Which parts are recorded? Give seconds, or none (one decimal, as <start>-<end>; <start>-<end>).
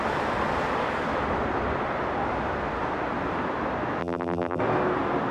0.0-4.0; 4.6-5.3